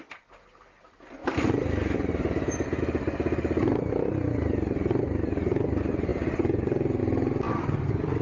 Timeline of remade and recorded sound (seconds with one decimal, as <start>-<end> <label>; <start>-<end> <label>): 0.0-8.2 recorded